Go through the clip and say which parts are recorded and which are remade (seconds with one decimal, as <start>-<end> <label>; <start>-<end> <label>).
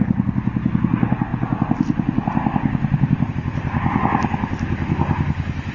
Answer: 0.0-5.7 recorded